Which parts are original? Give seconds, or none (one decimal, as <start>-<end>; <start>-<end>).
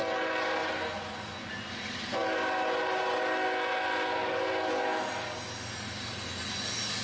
0.0-7.0